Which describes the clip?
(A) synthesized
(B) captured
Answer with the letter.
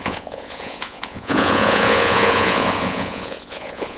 A